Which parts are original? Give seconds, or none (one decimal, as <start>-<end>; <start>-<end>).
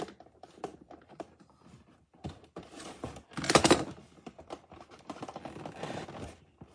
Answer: 0.0-6.7